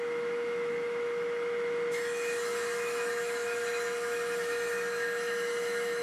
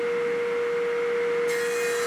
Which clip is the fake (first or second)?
first